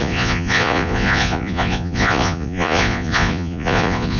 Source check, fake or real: fake